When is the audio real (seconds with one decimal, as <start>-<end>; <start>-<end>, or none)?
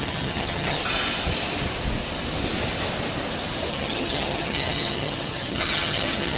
0.8-3.7